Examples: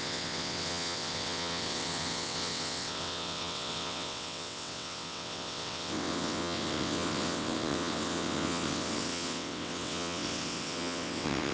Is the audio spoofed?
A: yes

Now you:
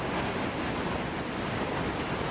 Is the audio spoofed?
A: no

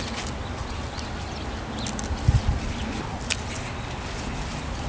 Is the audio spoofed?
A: no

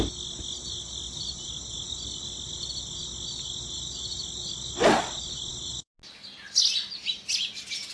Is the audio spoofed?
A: no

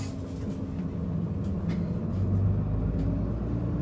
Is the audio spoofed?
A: no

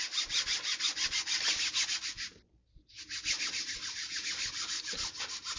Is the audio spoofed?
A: no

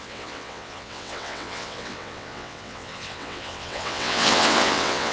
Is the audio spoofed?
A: yes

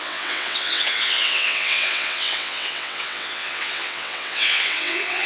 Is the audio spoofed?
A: yes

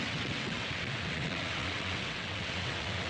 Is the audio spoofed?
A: yes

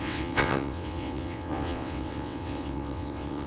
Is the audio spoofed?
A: yes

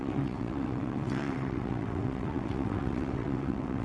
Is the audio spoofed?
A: yes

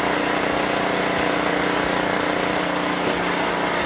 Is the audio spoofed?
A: no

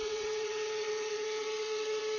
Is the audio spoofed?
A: yes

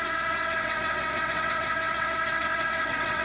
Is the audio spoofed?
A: yes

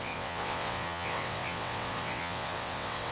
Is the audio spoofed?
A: yes